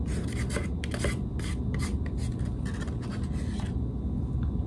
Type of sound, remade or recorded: recorded